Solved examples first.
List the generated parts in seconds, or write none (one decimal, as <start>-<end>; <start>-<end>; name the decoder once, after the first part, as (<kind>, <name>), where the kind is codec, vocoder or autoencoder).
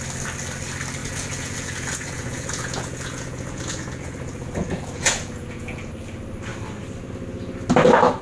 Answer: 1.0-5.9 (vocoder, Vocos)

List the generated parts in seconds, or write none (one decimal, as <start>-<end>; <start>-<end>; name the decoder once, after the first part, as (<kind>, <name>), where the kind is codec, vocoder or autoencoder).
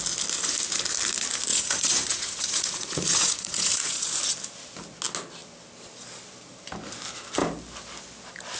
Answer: 1.5-4.1 (vocoder, Vocos)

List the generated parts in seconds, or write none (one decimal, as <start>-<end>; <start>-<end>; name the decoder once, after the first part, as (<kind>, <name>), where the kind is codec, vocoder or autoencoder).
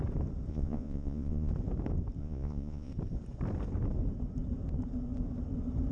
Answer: 0.5-1.5 (vocoder, Vocos); 2.2-2.9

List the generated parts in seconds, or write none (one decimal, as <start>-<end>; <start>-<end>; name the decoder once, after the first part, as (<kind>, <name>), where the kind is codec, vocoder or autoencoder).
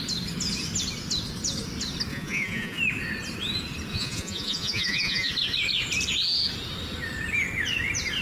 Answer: 2.1-2.8 (vocoder, Vocos); 3.9-5.3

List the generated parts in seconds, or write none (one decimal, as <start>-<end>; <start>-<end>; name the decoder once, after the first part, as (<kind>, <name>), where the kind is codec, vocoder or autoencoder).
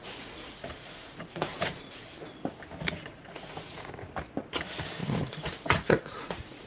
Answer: 0.0-2.1 (vocoder, Vocos); 3.1-4.1; 5.0-6.7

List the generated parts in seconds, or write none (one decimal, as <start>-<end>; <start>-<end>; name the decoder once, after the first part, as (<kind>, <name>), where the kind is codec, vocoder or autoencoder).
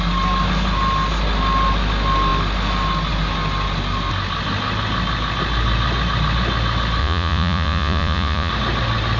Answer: 7.0-8.5 (vocoder, Vocos)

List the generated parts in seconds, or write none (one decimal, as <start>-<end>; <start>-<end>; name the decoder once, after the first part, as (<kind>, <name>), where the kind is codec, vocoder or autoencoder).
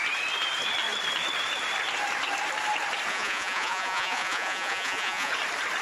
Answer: 3.1-5.3 (vocoder, Vocos)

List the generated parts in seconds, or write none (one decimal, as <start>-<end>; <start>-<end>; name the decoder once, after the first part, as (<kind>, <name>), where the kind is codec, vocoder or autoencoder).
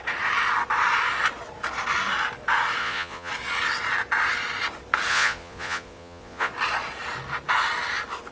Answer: 2.8-3.3 (vocoder, Vocos); 5.1-6.5